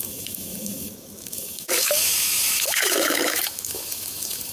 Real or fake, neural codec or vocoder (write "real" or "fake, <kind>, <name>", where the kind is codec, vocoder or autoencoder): fake, autoencoder, DAC-VAE